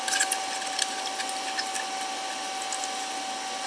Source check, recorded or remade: recorded